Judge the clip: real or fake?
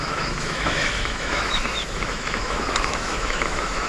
fake